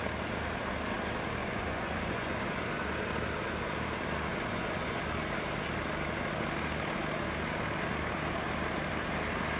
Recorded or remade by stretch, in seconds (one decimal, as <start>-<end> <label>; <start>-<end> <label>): 0.0-1.4 recorded; 1.4-2.9 remade; 2.9-4.3 recorded; 4.3-5.0 remade; 5.0-9.6 recorded